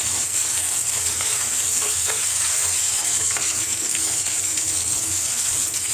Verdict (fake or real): fake